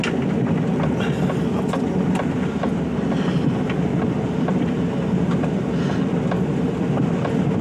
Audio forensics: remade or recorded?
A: recorded